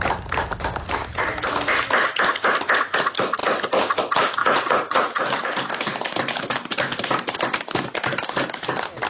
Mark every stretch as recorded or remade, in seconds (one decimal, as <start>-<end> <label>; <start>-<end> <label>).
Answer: 0.0-4.4 recorded; 4.4-5.2 remade; 5.2-9.1 recorded